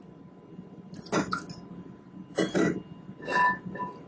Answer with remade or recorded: recorded